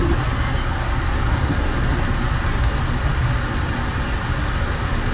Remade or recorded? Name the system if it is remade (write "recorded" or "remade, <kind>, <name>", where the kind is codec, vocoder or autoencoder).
recorded